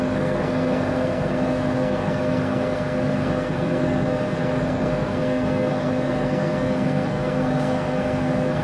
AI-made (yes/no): yes